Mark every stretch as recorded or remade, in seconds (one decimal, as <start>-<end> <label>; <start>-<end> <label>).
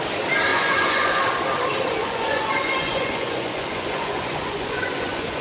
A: 0.0-0.5 recorded; 0.5-1.2 remade; 1.2-2.0 recorded; 2.0-5.4 remade